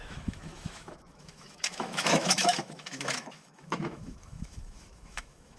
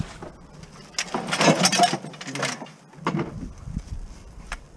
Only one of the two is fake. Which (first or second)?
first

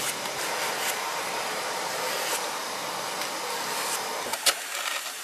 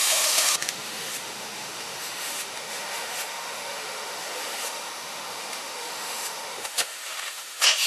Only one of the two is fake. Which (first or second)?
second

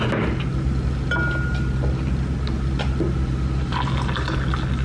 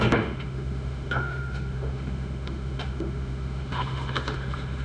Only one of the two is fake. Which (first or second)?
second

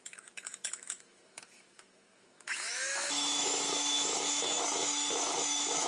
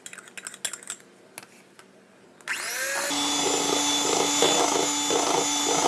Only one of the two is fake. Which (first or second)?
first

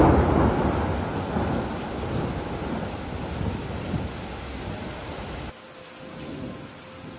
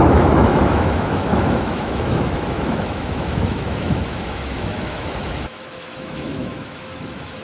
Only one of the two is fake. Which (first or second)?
second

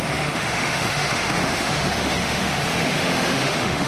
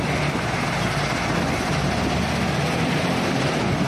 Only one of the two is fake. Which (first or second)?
first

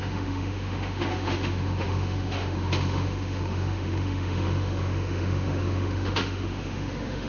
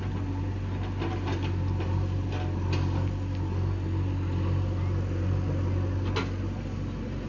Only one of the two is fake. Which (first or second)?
first